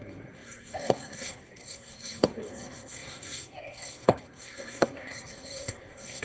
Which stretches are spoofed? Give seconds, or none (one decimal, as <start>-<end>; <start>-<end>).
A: 0.0-6.2